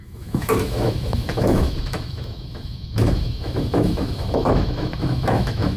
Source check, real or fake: fake